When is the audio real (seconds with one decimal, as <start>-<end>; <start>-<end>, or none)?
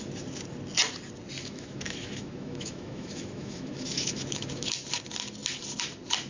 0.0-1.4; 4.7-6.3